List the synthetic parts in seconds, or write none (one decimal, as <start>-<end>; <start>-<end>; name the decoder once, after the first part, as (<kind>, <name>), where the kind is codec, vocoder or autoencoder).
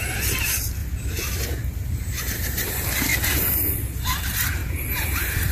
0.8-2.7 (vocoder, BigVGAN v2); 4.6-5.5